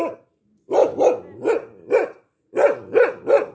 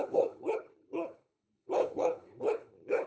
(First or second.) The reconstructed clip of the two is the second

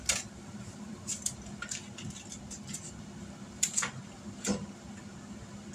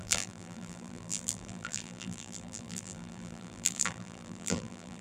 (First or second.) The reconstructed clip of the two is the second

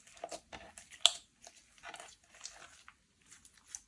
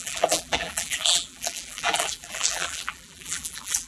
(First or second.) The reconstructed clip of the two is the second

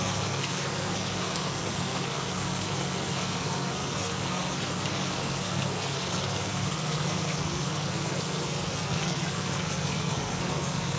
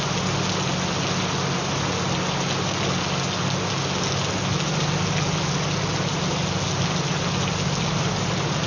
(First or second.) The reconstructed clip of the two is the first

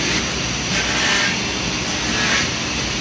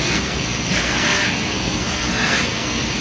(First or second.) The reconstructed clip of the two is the second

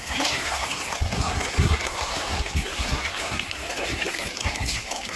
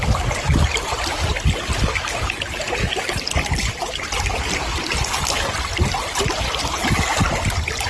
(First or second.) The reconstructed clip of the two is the first